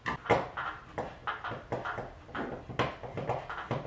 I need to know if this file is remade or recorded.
recorded